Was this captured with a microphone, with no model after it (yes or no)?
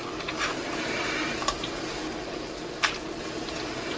yes